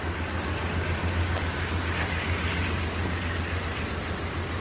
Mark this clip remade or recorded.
recorded